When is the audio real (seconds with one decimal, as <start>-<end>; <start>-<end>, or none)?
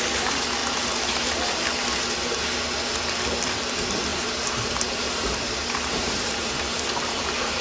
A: 0.0-4.1